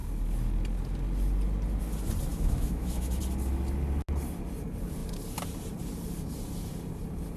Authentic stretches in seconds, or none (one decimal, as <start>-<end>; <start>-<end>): 0.0-2.3; 3.2-7.4